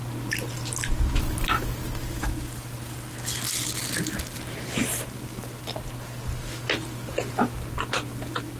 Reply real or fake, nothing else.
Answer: real